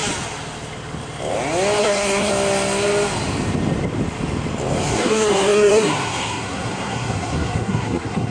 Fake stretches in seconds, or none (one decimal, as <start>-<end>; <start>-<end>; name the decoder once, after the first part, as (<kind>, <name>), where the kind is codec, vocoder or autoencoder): 1.8-2.3 (codec, SNAC); 4.9-8.3